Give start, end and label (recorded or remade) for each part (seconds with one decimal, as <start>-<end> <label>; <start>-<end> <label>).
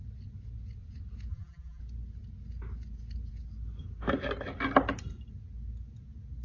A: 0.0-1.3 recorded; 1.3-1.8 remade; 1.8-6.4 recorded